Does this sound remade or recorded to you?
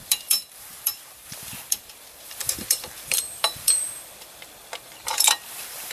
remade